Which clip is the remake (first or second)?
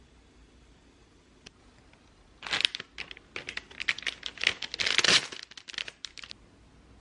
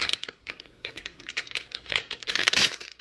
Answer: second